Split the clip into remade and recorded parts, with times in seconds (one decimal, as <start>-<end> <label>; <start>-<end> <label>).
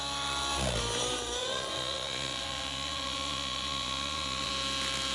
0.0-1.4 recorded; 1.4-4.5 remade; 4.5-5.1 recorded